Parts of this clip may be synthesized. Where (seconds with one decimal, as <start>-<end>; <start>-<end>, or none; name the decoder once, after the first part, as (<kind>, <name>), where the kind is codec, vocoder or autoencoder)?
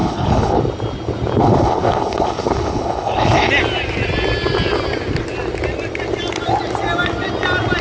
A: 0.0-0.6 (codec, HILCodec); 1.4-3.5